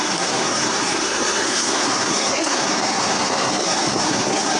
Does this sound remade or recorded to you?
remade